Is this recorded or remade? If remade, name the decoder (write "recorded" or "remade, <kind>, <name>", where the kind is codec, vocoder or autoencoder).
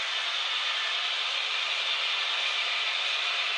recorded